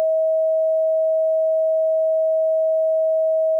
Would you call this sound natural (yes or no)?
yes